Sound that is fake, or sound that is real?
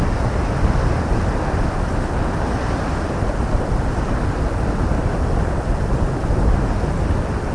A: real